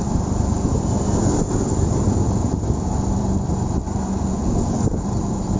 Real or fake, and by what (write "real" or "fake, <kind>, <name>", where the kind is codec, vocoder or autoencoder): real